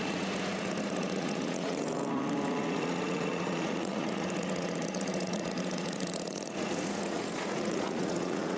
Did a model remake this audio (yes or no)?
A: yes